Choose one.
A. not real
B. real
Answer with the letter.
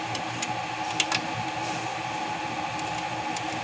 B